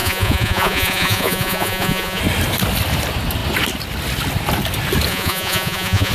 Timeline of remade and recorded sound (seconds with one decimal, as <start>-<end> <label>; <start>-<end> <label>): 0.0-2.2 remade; 2.2-5.1 recorded; 5.1-6.1 remade